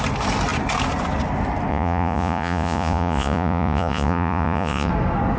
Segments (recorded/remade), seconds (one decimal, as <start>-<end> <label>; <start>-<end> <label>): 0.0-1.7 recorded; 1.7-4.9 remade; 4.9-5.4 recorded